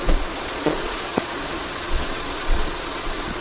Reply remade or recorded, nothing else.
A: remade